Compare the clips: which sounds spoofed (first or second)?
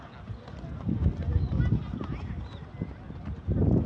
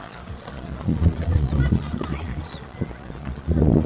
second